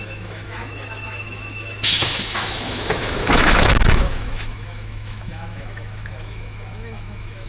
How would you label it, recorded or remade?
remade